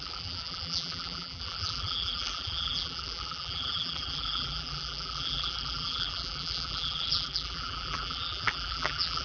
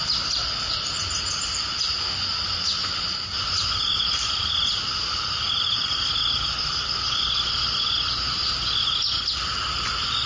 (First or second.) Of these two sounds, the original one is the second